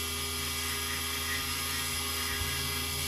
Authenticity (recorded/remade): recorded